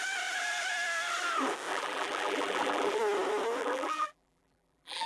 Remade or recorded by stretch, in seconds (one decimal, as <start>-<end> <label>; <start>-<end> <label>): 0.0-1.7 recorded; 1.7-3.0 remade; 3.0-3.6 recorded; 3.6-5.1 remade

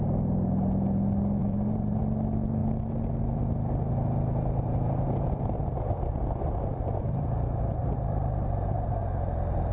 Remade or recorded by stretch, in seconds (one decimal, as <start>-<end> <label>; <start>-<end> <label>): 0.0-1.4 recorded; 1.4-2.0 remade; 2.0-7.8 recorded; 7.8-9.0 remade; 9.0-9.7 recorded

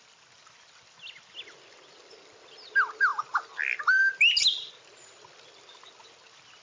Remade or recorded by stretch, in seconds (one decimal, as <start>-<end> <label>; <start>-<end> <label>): 0.0-6.6 recorded

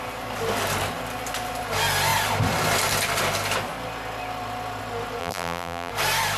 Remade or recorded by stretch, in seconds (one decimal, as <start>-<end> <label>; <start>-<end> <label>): 0.0-5.2 recorded; 5.2-5.9 remade; 5.9-6.4 recorded

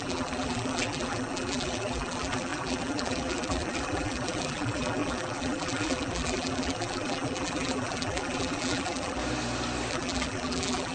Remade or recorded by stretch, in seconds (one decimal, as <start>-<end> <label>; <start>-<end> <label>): 0.0-9.2 remade; 9.2-9.9 recorded; 9.9-10.9 remade

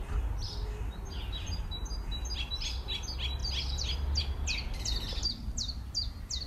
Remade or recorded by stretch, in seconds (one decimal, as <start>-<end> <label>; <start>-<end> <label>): 0.0-6.5 recorded